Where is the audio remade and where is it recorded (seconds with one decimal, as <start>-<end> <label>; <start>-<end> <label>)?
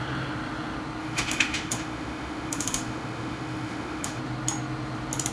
0.0-1.0 recorded; 1.0-4.2 remade; 4.2-5.3 recorded